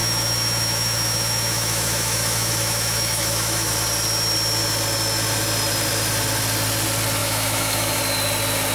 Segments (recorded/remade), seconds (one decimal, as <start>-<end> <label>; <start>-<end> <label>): 0.0-3.7 remade; 3.7-7.2 recorded; 7.2-8.0 remade; 8.0-8.7 recorded